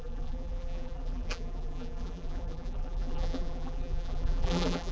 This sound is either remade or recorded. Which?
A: remade